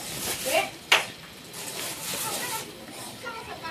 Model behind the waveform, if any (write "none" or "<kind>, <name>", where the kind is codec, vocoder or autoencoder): none